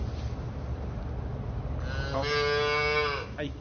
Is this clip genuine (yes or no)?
yes